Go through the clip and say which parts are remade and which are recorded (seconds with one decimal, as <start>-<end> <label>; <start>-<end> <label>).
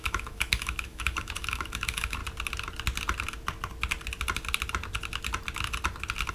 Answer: 0.0-2.2 remade; 2.2-6.3 recorded